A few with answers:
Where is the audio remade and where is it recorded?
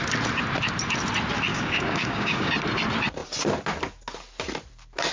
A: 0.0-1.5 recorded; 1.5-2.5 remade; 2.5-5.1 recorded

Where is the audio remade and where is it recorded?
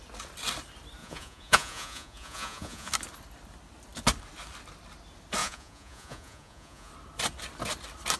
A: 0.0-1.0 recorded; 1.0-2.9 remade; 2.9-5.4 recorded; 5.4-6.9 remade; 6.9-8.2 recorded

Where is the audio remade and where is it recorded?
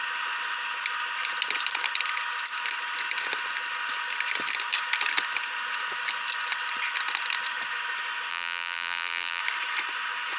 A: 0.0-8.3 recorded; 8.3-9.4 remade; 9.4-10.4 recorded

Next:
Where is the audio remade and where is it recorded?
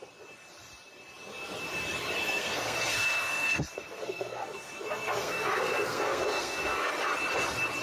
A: 0.0-2.2 recorded; 2.2-6.9 remade; 6.9-7.8 recorded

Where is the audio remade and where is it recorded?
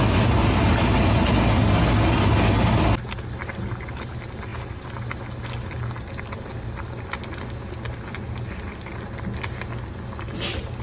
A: 0.0-10.8 recorded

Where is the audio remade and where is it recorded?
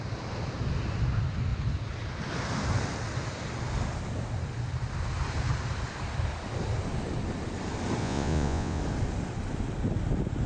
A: 0.0-8.0 recorded; 8.0-8.8 remade; 8.8-10.5 recorded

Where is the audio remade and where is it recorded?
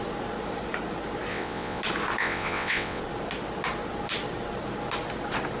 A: 0.0-1.3 recorded; 1.3-1.8 remade; 1.8-2.2 recorded; 2.2-3.0 remade; 3.0-5.6 recorded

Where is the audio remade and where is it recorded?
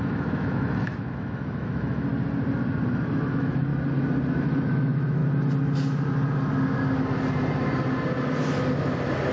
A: 0.0-2.1 remade; 2.1-2.9 recorded; 2.9-3.7 remade; 3.7-4.4 recorded; 4.4-5.2 remade; 5.2-9.3 recorded